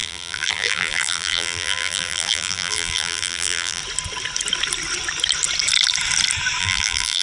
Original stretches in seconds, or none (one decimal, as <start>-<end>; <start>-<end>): 3.8-6.6